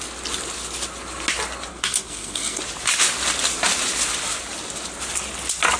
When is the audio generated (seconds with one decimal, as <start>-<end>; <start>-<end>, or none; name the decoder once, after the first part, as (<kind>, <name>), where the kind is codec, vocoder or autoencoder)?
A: 1.7-2.6 (codec, SNAC)